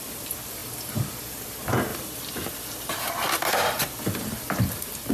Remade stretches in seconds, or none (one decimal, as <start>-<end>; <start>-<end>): 1.9-5.1